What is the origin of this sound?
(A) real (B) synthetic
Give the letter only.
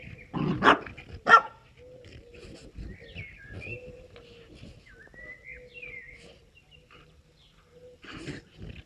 A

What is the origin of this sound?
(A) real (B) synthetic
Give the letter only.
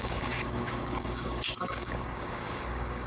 B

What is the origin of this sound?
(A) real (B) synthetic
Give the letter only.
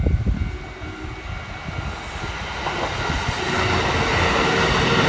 A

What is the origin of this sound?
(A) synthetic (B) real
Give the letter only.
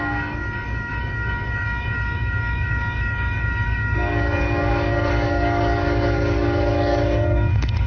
A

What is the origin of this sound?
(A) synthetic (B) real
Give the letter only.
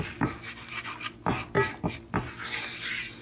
B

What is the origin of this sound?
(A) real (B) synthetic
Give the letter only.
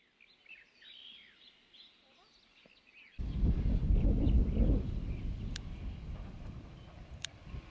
A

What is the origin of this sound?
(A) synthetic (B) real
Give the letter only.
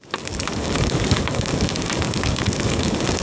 A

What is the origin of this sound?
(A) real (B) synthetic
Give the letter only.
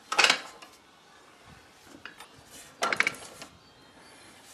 A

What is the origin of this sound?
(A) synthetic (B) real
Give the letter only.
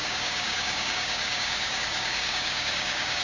A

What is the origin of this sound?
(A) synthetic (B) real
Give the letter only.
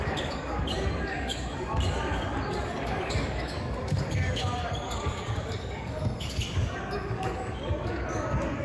A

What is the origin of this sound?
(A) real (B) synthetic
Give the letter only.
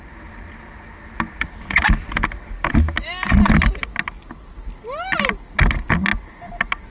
A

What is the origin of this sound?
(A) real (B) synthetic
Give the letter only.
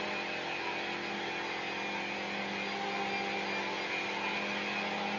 A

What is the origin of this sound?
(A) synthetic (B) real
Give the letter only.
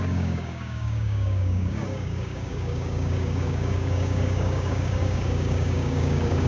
A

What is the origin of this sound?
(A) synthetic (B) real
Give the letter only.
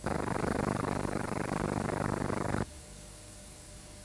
A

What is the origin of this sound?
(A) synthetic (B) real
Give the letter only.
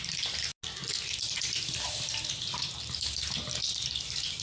B